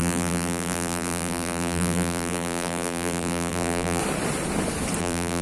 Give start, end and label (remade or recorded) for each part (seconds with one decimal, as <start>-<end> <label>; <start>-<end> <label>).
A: 0.0-4.0 remade; 4.0-5.0 recorded; 5.0-5.4 remade